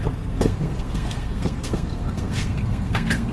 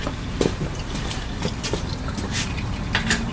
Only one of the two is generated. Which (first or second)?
first